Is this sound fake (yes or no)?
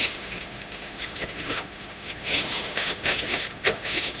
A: yes